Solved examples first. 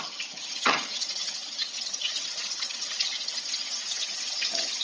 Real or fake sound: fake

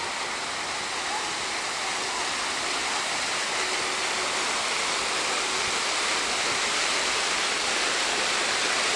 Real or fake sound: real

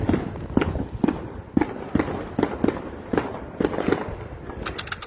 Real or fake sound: real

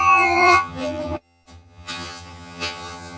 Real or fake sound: fake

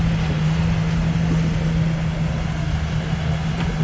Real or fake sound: real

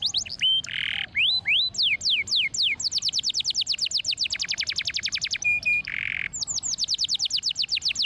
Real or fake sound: real